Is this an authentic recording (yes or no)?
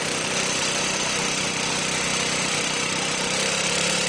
yes